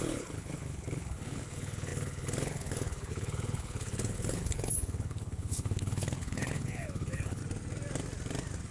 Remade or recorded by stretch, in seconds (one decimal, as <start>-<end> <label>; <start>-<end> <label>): 0.0-7.4 remade; 7.4-8.7 recorded